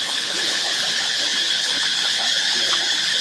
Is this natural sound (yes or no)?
no